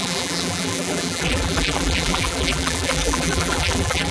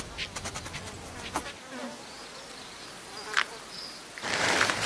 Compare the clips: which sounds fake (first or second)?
first